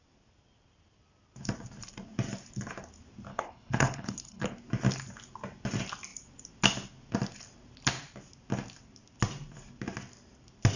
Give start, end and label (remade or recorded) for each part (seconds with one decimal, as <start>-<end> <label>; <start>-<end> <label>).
0.0-3.3 recorded; 3.3-4.4 remade; 4.4-10.8 recorded